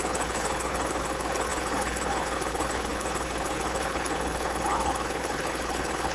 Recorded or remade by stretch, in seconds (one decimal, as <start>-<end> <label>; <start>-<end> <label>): 0.0-6.1 remade